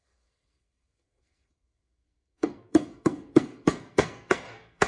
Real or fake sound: fake